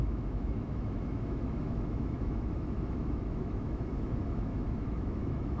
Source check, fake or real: fake